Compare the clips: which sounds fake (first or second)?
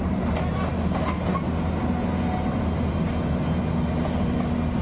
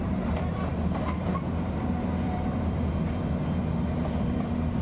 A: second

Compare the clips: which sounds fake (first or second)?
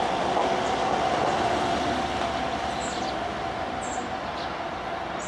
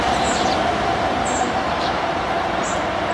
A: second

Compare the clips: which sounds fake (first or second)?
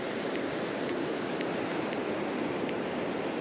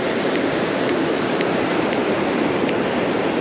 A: second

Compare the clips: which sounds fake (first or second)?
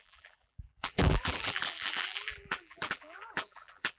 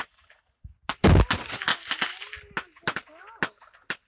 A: first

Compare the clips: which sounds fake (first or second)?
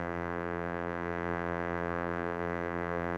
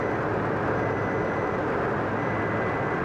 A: first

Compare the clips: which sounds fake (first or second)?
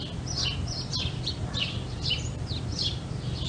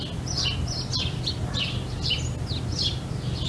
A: first